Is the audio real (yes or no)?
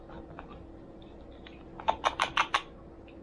yes